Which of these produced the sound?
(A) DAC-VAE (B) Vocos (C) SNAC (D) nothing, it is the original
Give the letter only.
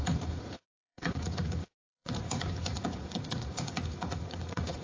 B